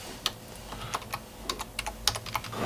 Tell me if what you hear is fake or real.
real